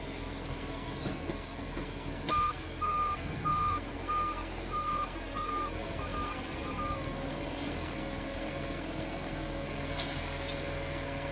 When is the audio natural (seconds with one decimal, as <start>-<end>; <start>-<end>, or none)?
none

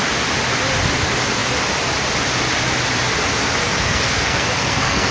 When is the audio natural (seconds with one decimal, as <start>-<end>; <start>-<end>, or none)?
0.0-3.6

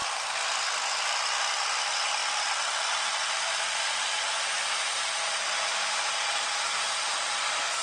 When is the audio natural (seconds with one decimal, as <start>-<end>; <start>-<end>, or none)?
0.0-7.8

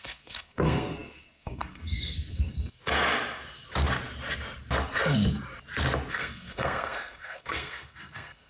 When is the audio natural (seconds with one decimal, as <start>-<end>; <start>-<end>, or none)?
2.8-6.1

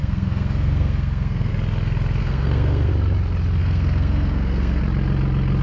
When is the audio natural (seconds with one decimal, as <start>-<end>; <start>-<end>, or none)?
1.5-2.2; 2.9-3.6; 4.8-5.6